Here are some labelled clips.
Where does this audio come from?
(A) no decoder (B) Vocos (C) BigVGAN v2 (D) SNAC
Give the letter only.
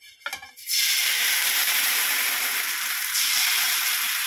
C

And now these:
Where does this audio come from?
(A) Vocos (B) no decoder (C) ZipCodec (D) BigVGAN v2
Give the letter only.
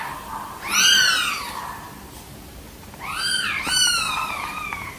D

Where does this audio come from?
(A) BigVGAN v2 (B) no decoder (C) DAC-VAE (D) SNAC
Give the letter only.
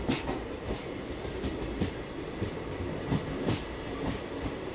B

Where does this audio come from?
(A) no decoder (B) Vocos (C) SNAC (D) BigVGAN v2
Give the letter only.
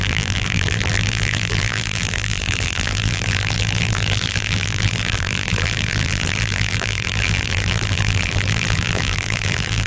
D